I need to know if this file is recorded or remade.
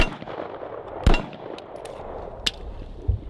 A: recorded